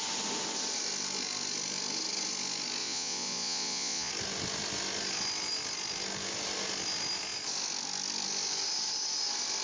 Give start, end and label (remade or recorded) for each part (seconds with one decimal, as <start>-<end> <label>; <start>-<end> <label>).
0.0-2.8 recorded; 2.8-4.1 remade; 4.1-9.6 recorded